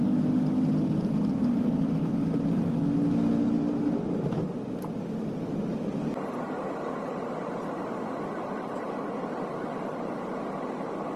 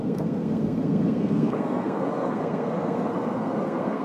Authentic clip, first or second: first